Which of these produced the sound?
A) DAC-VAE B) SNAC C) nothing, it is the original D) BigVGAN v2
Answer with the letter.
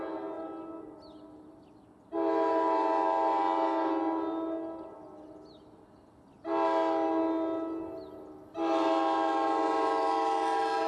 C